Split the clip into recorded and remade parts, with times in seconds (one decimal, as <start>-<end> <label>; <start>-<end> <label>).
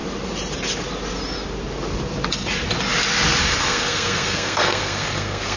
0.0-3.4 recorded; 3.4-5.6 remade